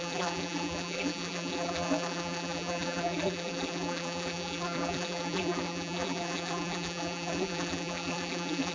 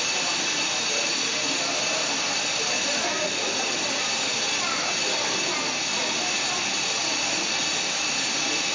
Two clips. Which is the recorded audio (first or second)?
second